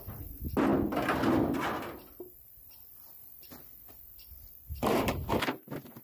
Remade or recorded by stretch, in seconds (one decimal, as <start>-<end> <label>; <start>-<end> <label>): 0.0-6.0 recorded